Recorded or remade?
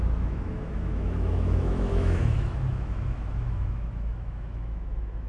remade